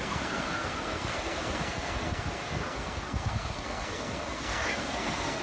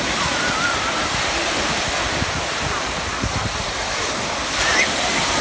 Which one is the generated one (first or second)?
first